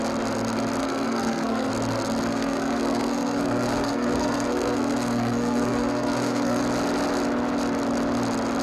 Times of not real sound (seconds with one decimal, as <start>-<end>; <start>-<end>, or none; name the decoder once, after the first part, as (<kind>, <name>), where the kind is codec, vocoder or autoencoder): 0.8-1.7 (codec, SNAC); 2.3-6.6